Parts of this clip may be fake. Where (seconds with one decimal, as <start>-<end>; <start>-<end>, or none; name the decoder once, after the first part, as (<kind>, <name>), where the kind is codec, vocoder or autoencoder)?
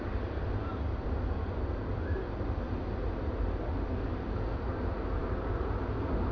none